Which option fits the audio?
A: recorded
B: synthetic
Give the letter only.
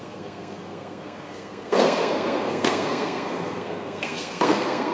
B